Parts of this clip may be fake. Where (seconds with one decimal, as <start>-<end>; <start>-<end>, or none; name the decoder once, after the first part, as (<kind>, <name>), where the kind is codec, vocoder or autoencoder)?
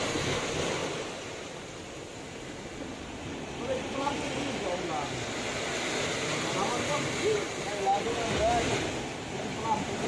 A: none